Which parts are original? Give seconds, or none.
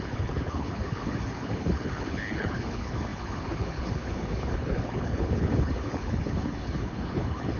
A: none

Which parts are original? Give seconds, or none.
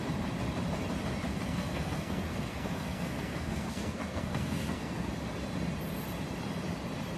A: 0.0-1.3; 5.1-7.2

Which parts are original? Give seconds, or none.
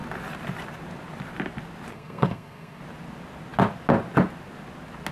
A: 0.0-1.9; 2.8-5.1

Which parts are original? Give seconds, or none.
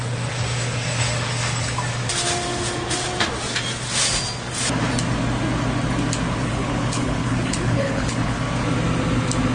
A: 0.0-6.4; 8.4-9.5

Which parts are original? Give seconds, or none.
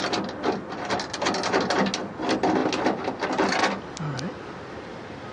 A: 0.0-5.3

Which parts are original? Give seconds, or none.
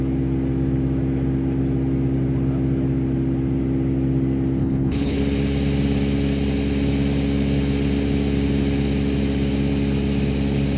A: 0.0-4.6; 5.2-10.8